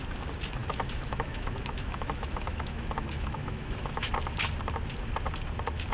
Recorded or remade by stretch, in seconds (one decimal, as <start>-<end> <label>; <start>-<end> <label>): 0.0-0.6 recorded; 0.6-4.1 remade; 4.1-5.9 recorded